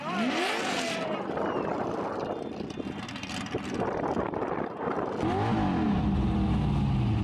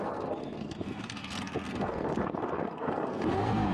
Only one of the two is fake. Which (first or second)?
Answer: second